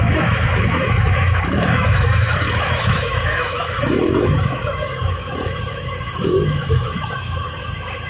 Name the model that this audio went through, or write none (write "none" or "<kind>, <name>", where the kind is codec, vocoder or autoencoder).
autoencoder, DAC-VAE